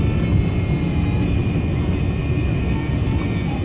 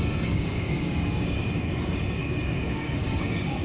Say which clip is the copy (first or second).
second